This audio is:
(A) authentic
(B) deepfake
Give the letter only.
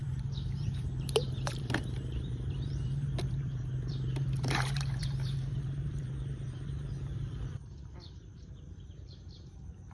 B